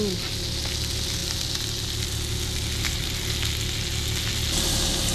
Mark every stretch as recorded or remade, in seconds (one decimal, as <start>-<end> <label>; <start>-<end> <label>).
0.0-5.1 recorded